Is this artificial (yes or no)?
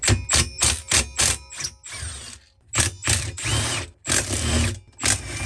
no